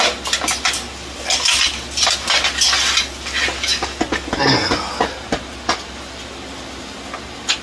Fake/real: real